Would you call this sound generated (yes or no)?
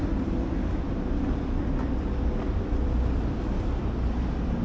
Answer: no